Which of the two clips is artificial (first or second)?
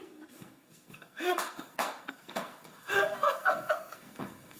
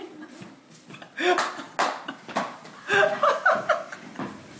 first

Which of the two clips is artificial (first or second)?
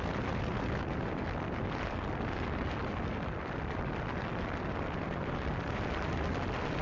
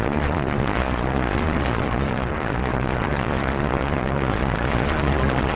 second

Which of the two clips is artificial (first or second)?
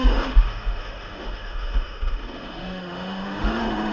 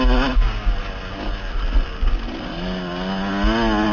first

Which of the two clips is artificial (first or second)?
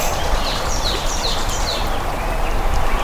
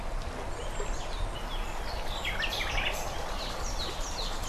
first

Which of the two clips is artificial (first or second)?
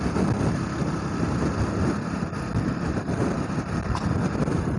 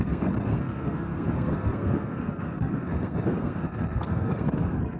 second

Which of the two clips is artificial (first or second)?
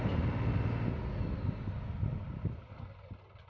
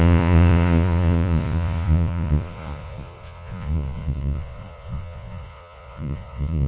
second